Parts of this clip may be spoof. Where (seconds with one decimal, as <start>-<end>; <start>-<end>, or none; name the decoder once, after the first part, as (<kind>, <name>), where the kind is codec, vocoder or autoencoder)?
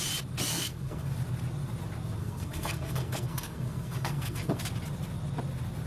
0.5-1.1 (codec, SNAC); 2.2-4.6